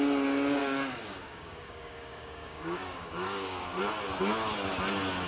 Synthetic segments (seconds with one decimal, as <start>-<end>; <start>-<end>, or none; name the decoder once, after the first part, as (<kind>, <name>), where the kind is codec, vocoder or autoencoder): 0.6-3.8 (codec, DAC)